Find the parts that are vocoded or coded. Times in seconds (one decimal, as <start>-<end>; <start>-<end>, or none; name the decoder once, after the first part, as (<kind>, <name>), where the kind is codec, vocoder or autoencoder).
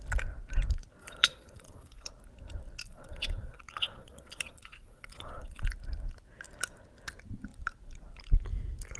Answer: 1.0-2.1 (vocoder, Vocos); 2.8-5.7